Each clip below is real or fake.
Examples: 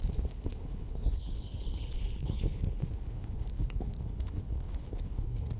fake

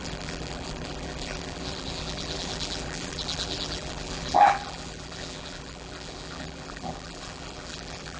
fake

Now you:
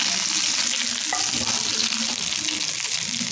real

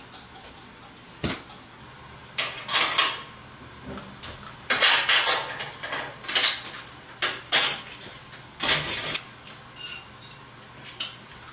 real